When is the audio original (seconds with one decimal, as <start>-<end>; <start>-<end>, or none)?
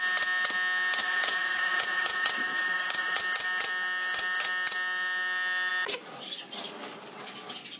0.0-1.0; 3.2-7.8